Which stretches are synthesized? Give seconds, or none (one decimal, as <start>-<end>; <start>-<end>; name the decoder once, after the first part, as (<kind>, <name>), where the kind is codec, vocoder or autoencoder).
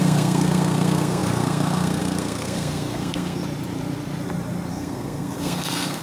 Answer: 0.0-3.4 (codec, SNAC); 4.7-6.0